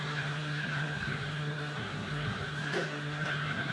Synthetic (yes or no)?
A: yes